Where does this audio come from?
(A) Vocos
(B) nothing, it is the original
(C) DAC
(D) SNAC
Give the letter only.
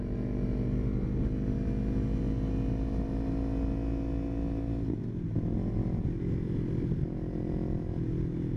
B